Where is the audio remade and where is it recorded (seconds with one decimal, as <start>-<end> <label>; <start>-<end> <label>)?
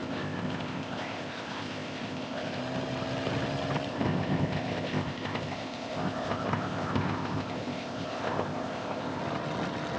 0.0-2.6 remade; 2.6-3.9 recorded; 3.9-9.2 remade; 9.2-10.0 recorded